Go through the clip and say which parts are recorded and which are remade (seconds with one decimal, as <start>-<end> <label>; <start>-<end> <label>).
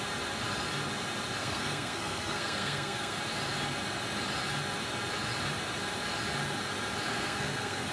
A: 0.0-1.4 recorded; 1.4-3.2 remade; 3.2-7.1 recorded; 7.1-7.9 remade